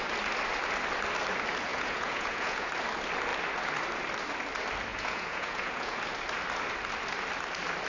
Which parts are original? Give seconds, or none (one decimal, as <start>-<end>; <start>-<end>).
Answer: 0.0-1.7; 2.7-4.9; 6.0-7.9

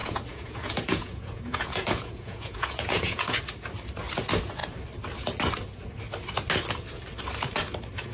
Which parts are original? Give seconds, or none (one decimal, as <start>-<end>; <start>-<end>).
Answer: 3.4-8.1